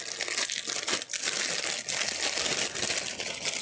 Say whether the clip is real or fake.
real